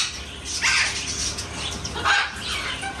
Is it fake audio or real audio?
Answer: real